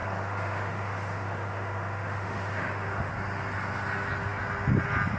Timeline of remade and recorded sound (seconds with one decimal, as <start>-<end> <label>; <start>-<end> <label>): 0.0-3.1 remade; 3.1-5.2 recorded